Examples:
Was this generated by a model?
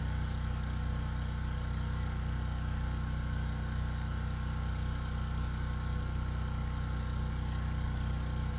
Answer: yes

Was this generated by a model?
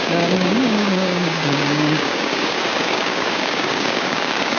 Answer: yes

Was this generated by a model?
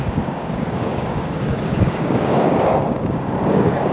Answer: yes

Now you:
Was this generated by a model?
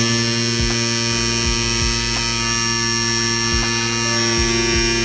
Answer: no